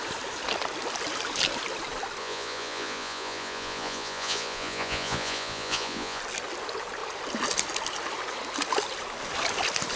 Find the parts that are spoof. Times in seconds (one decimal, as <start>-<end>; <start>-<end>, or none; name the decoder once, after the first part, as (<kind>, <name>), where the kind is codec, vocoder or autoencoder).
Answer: 2.2-6.2 (vocoder, Vocos)